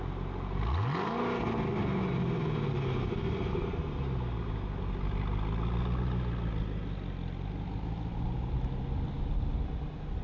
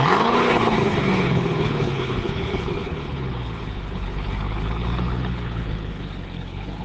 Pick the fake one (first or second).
second